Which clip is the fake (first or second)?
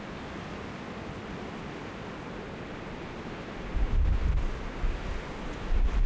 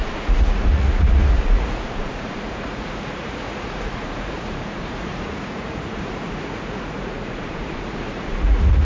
second